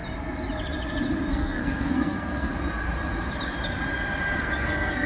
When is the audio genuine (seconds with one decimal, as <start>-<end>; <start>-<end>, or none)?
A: 0.0-1.3; 2.5-4.4